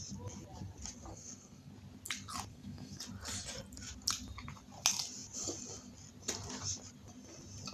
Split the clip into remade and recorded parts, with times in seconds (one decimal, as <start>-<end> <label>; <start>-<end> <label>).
0.0-1.1 recorded; 1.1-1.7 remade; 1.7-2.5 recorded; 2.5-3.0 remade; 3.0-7.7 recorded